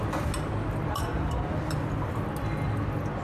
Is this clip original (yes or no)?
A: yes